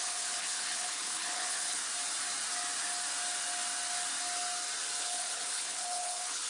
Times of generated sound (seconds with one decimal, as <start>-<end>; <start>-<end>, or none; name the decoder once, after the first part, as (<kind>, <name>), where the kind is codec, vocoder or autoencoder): 0.0-1.8 (codec, HILCodec); 5.0-6.5